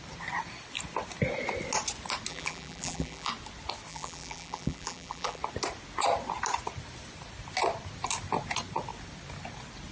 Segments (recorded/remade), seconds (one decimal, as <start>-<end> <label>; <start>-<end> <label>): 0.0-2.3 recorded; 2.3-3.3 remade; 3.3-3.9 recorded; 3.9-5.4 remade; 5.4-9.9 recorded